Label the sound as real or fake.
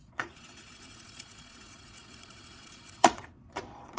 fake